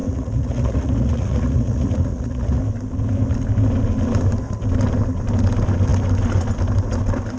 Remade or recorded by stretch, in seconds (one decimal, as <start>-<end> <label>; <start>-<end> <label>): 0.0-2.6 remade; 2.6-7.4 recorded